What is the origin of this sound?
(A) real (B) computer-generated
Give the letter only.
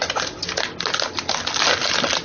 A